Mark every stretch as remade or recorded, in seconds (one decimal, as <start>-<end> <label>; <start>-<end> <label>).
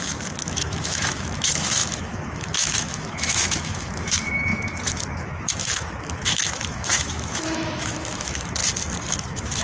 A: 0.0-8.6 remade; 8.6-9.1 recorded; 9.1-9.6 remade